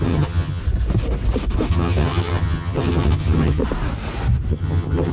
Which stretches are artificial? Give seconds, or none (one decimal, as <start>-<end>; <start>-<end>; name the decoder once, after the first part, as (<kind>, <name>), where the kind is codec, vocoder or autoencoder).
0.0-0.6 (vocoder, HiFi-GAN); 1.7-3.6; 4.5-5.1